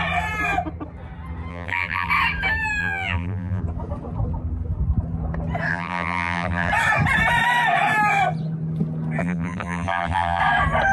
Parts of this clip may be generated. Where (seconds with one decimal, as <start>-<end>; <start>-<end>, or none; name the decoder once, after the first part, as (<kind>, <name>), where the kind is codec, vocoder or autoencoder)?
1.5-2.1 (vocoder, BigVGAN v2); 2.8-3.6; 5.7-6.7; 9.2-10.4